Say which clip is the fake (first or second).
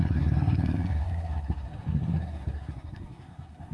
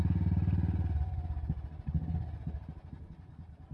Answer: first